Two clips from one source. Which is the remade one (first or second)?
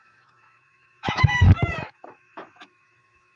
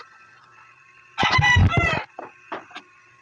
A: first